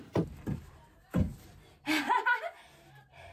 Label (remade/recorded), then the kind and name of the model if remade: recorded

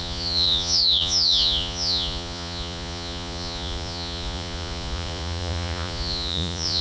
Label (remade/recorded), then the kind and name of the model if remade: remade, vocoder, Vocos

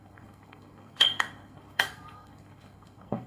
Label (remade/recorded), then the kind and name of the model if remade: remade, codec, SNAC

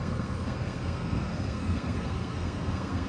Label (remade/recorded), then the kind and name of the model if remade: remade, codec, SNAC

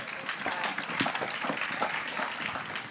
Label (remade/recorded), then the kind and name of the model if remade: recorded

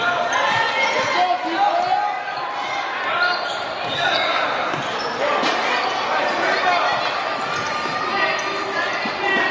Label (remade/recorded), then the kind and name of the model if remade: recorded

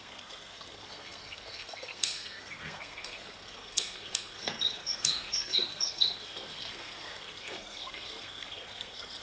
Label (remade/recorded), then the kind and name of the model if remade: remade, codec, SNAC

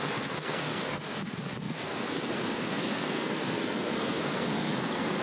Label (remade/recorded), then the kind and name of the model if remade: remade, codec, SNAC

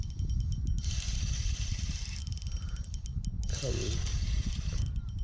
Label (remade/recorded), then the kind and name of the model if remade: recorded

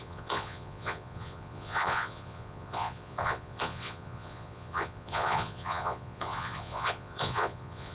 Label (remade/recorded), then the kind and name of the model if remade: remade, vocoder, Vocos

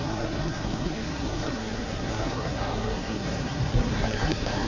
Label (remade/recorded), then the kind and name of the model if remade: remade, codec, SNAC